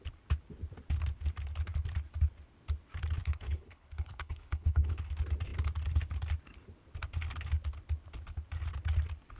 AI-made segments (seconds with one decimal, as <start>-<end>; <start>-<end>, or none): 3.2-5.1